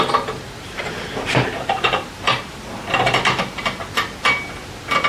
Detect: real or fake real